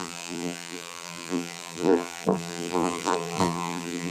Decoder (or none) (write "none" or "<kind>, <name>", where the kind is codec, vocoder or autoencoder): vocoder, BigVGAN v2